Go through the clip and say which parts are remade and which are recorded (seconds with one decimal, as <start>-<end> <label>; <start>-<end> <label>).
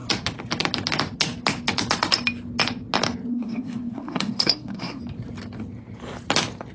0.0-3.3 recorded; 3.3-5.0 remade; 5.0-6.7 recorded